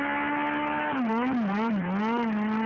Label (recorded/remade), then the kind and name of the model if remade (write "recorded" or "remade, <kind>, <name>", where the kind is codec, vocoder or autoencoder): recorded